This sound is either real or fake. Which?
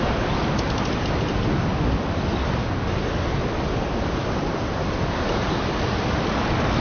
real